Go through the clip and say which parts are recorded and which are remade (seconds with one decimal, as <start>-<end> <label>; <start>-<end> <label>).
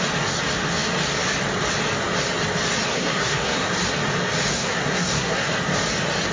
0.0-2.9 recorded; 2.9-3.7 remade; 3.7-4.5 recorded; 4.5-5.5 remade; 5.5-6.3 recorded